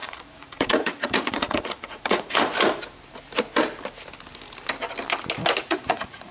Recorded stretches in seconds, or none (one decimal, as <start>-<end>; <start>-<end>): 2.5-5.6

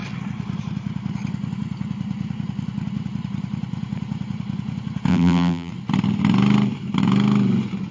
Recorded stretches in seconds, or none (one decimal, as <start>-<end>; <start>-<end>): 0.0-5.1; 5.7-7.9

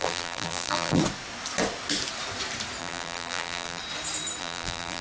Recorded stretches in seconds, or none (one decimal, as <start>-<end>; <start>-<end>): 1.0-2.8; 3.8-4.4

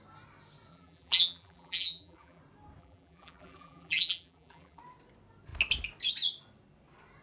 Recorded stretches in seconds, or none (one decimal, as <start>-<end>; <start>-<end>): 0.0-0.7; 2.4-2.8; 4.8-7.2